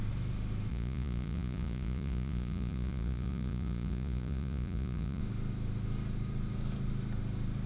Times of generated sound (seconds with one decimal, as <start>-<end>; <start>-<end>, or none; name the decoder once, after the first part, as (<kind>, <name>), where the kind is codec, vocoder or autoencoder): 0.7-5.2 (vocoder, Vocos)